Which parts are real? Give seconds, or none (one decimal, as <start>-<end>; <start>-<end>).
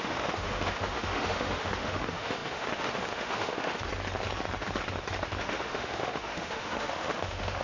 3.9-5.4